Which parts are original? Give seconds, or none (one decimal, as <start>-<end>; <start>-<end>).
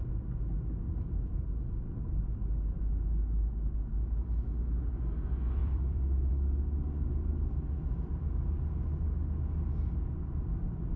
0.0-5.6; 6.3-11.0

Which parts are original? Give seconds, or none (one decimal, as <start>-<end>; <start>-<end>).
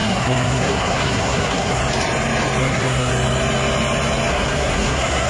1.8-2.6; 3.1-4.3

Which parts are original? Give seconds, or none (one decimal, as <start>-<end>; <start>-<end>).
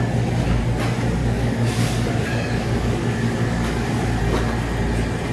0.0-1.2; 4.2-5.3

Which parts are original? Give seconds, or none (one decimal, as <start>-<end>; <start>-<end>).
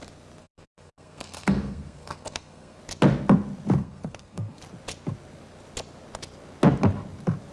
0.0-0.4; 2.8-3.8; 4.6-7.5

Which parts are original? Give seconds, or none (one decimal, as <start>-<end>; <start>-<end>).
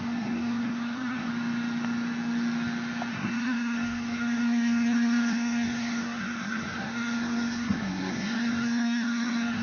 1.3-3.1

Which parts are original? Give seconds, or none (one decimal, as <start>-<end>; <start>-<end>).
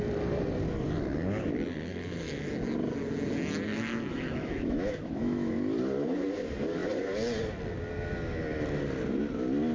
0.0-1.9; 2.5-3.7; 5.5-9.7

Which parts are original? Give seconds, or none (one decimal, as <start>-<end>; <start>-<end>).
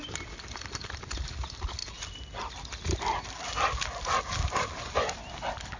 0.0-5.8